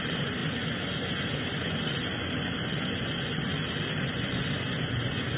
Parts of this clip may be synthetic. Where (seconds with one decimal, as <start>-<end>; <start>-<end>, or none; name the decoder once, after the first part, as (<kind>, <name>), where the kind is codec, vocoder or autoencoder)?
0.0-3.5 (vocoder, Vocos); 4.0-5.4